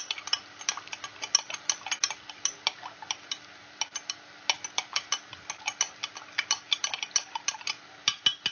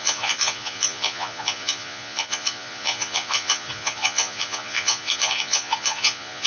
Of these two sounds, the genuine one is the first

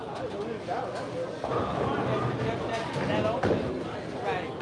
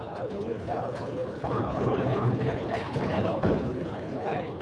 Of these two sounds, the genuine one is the first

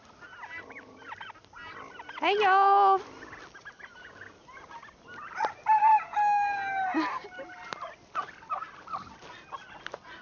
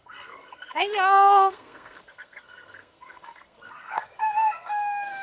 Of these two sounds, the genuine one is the first